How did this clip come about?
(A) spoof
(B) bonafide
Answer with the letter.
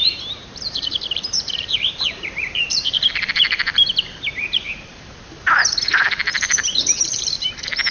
A